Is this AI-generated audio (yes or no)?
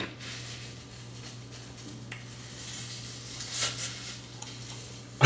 no